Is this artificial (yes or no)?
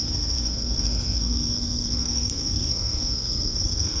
yes